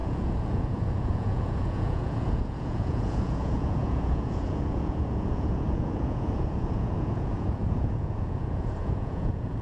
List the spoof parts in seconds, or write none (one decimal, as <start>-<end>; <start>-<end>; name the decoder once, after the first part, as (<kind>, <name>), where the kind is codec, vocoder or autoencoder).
0.0-9.6 (vocoder, Vocos)